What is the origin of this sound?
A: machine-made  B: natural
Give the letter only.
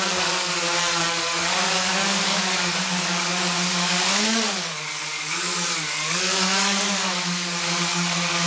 A